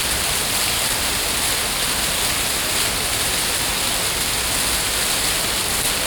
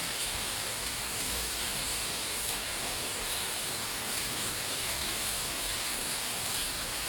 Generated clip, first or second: second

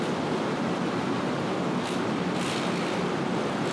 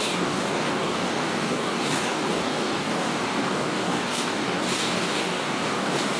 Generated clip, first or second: second